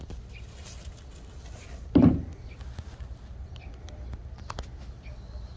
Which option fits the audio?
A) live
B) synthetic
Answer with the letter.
A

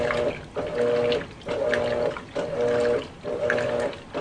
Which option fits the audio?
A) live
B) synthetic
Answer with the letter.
A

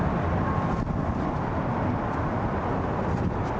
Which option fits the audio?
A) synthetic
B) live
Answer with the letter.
B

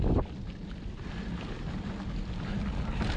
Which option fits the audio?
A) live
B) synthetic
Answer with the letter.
A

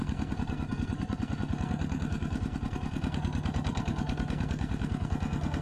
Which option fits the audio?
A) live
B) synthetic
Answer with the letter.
B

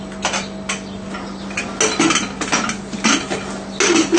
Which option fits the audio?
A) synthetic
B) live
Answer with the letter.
B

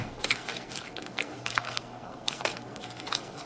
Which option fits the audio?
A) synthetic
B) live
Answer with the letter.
A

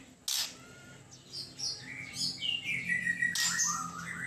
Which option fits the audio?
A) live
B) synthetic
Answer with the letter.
A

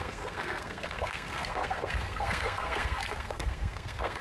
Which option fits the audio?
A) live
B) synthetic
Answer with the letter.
B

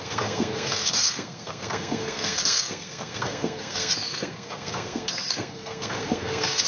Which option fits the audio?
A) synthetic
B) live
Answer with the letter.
A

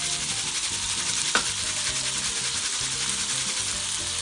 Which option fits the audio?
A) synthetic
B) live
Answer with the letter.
B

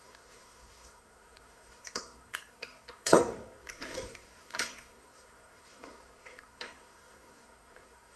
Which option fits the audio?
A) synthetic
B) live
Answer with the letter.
A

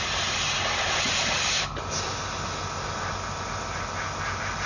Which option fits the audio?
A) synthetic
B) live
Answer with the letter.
B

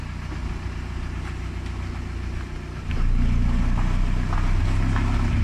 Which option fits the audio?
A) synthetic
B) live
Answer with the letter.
B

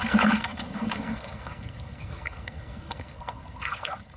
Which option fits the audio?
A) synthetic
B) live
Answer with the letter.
A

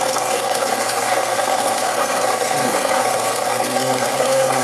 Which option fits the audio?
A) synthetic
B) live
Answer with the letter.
A